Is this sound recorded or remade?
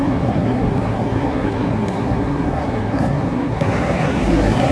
remade